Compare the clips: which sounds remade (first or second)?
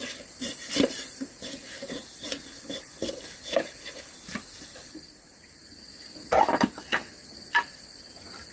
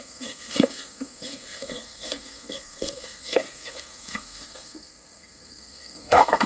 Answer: second